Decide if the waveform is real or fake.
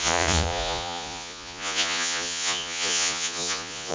fake